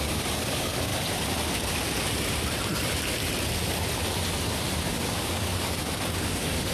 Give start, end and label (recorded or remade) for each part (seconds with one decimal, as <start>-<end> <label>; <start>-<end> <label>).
0.0-0.9 remade; 0.9-4.9 recorded; 4.9-6.7 remade